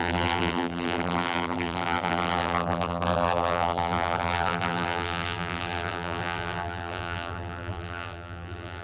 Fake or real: fake